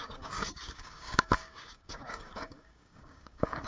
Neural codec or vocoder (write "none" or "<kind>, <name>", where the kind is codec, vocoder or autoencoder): codec, DAC